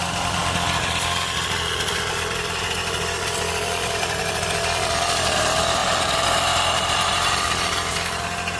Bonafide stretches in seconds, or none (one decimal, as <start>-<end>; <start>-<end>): 0.0-5.8; 7.4-8.6